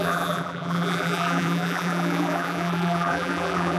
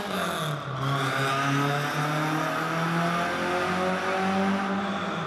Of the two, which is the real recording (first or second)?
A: second